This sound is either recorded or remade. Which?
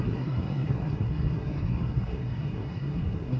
remade